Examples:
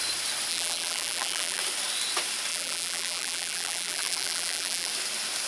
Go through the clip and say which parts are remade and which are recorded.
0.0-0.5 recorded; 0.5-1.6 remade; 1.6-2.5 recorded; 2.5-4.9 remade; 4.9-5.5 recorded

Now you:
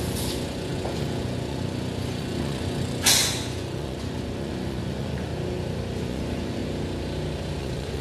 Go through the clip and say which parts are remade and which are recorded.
0.0-5.3 remade; 5.3-6.0 recorded; 6.0-6.6 remade; 6.6-7.6 recorded; 7.6-8.0 remade

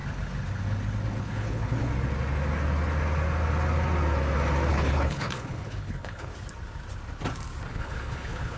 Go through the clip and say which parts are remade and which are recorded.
0.0-1.2 recorded; 1.2-1.9 remade; 1.9-4.7 recorded; 4.7-6.3 remade; 6.3-7.7 recorded; 7.7-8.6 remade

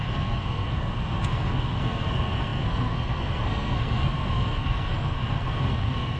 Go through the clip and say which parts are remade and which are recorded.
0.0-6.2 remade

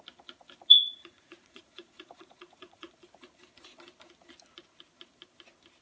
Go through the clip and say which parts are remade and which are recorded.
0.0-0.7 recorded; 0.7-2.9 remade; 2.9-5.8 recorded

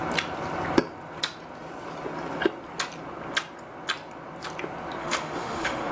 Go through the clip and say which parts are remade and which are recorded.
0.0-5.0 recorded; 5.0-5.9 remade